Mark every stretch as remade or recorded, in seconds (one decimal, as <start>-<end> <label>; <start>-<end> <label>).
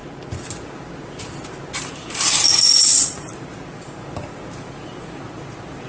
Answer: 0.0-2.9 recorded; 2.9-4.9 remade; 4.9-5.9 recorded